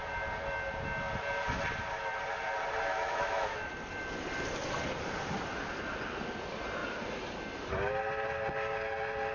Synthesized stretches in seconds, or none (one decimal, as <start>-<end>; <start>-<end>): 2.9-3.7